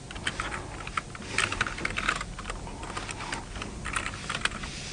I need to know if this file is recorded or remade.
recorded